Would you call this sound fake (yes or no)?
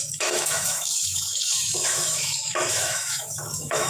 yes